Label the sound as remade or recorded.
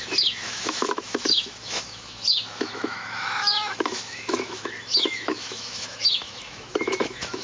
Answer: remade